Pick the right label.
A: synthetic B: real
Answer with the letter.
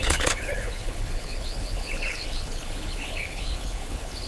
A